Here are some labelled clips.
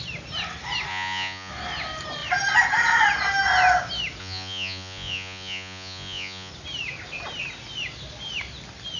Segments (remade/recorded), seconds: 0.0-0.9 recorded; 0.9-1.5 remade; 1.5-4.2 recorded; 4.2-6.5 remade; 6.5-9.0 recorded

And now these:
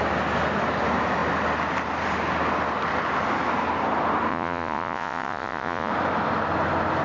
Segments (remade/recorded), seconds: 0.0-4.3 recorded; 4.3-5.9 remade; 5.9-7.0 recorded

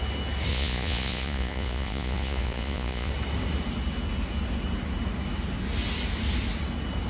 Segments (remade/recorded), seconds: 0.0-0.5 recorded; 0.5-3.1 remade; 3.1-7.1 recorded

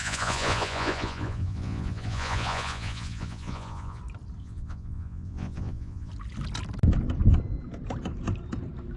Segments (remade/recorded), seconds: 0.0-4.0 remade; 4.0-4.4 recorded; 4.4-6.1 remade; 6.1-9.0 recorded

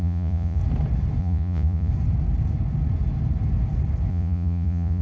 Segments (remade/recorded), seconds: 0.0-0.6 remade; 0.6-1.2 recorded; 1.2-1.9 remade; 1.9-4.1 recorded; 4.1-5.0 remade

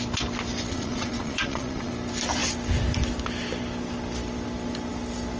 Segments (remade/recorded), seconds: 0.0-0.7 recorded; 0.7-1.9 remade; 1.9-5.4 recorded

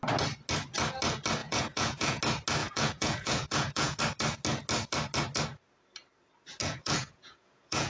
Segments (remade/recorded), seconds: 0.0-1.4 recorded; 1.4-2.2 remade; 2.2-2.6 recorded; 2.6-4.0 remade; 4.0-6.6 recorded; 6.6-7.9 remade

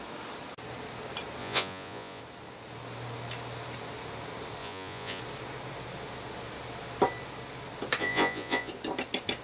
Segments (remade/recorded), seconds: 0.0-1.4 recorded; 1.4-2.2 remade; 2.2-4.6 recorded; 4.6-5.2 remade; 5.2-8.0 recorded; 8.0-8.7 remade; 8.7-9.4 recorded